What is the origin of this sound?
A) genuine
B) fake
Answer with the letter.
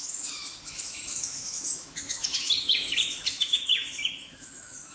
B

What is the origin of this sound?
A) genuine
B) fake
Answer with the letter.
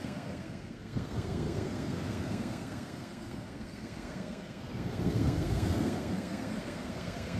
B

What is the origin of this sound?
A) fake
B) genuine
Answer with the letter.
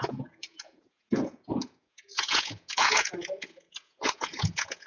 A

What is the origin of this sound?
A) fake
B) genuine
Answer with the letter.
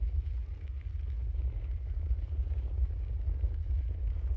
B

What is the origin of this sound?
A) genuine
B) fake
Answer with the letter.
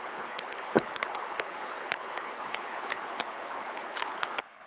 B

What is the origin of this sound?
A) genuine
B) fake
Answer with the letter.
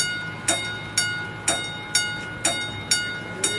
A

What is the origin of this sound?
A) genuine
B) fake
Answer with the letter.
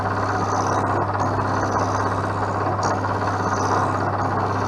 A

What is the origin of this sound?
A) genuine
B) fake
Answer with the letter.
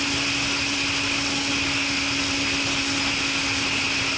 A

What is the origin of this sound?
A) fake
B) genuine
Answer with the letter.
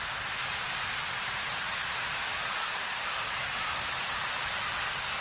B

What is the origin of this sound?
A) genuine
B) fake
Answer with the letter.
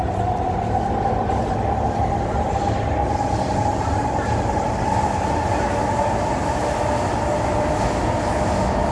A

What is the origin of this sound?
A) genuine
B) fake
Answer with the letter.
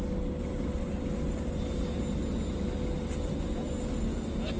A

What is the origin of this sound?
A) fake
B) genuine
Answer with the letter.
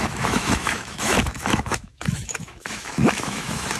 A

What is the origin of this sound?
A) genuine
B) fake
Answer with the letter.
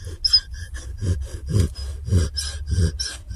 A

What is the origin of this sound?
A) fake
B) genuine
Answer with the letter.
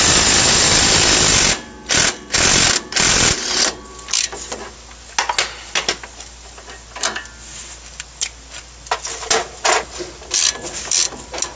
B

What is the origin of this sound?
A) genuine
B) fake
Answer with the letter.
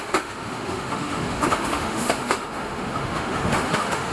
B